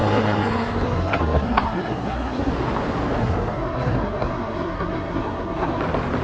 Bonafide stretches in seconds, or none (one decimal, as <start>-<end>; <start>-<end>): 2.5-3.2; 5.8-6.2